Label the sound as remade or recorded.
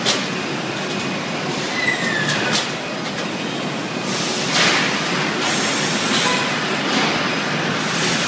recorded